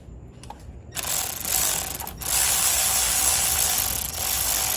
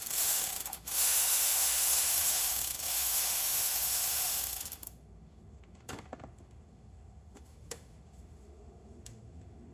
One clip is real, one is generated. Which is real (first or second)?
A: first